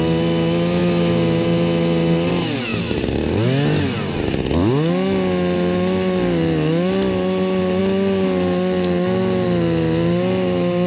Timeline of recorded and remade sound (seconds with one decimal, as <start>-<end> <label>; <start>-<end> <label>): 0.0-10.9 recorded

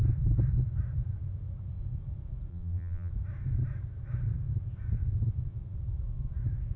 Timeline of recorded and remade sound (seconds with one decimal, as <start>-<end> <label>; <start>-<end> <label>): 0.0-2.5 recorded; 2.5-3.1 remade; 3.1-6.8 recorded